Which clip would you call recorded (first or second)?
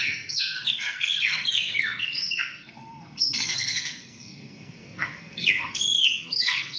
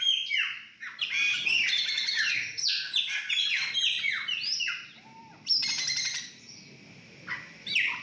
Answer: second